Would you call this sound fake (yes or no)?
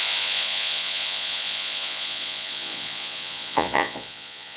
yes